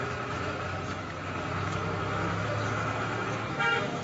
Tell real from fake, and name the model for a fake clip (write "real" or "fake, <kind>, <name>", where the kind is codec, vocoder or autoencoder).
fake, autoencoder, DAC-VAE